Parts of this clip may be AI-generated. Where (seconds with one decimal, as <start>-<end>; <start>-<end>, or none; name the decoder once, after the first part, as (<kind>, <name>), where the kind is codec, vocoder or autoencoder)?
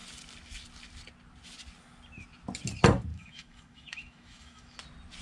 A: 3.1-4.8 (autoencoder, DAC-VAE)